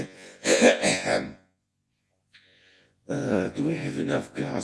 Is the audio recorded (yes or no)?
no